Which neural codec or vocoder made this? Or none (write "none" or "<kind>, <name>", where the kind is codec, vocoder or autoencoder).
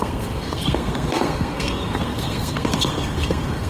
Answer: codec, SNAC